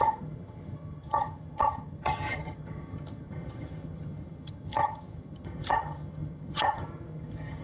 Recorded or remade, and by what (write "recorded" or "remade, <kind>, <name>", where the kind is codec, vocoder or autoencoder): remade, vocoder, HiFi-GAN